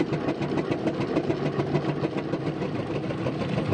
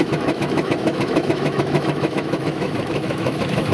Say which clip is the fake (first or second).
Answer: second